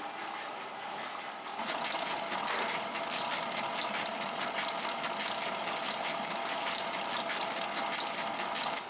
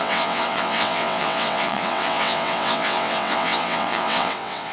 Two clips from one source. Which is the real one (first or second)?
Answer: first